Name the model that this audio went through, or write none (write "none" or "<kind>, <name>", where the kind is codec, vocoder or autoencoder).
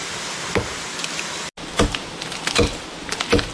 none